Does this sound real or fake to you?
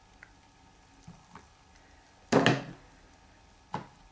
real